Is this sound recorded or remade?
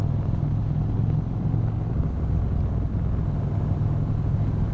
recorded